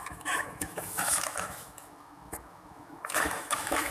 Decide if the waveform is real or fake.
fake